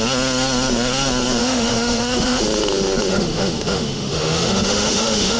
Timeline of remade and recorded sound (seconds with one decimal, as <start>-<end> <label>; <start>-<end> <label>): 0.0-1.4 recorded; 1.4-2.4 remade; 2.4-3.1 recorded; 3.1-5.4 remade